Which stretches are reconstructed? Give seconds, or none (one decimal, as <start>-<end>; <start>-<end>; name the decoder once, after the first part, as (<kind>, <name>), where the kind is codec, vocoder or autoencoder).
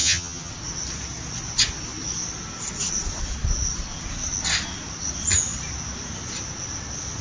0.0-0.5 (vocoder, HiFi-GAN)